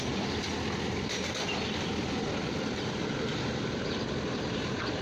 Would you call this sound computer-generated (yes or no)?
no